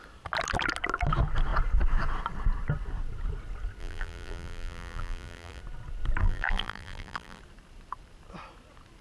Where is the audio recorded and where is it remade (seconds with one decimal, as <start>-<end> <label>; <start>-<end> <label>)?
0.0-3.8 recorded; 3.8-5.6 remade; 5.6-6.2 recorded; 6.2-7.4 remade; 7.4-9.0 recorded